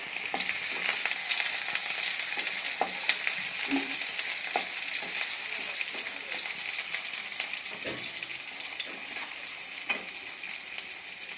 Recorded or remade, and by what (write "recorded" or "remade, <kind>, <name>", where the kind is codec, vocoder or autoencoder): recorded